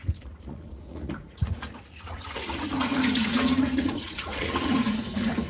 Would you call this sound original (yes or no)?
no